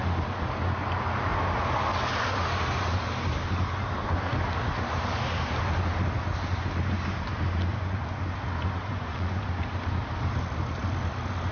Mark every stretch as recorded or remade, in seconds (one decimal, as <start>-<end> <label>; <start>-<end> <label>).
0.0-7.7 recorded; 7.7-8.2 remade; 8.2-8.8 recorded; 8.8-9.5 remade; 9.5-11.5 recorded